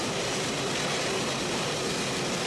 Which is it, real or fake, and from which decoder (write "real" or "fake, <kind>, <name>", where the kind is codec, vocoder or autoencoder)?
real